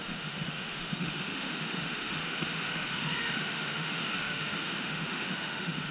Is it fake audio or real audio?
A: fake